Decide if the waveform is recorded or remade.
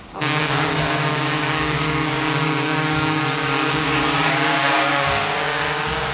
remade